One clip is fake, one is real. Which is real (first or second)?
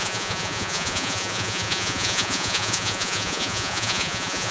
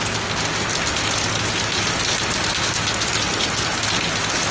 second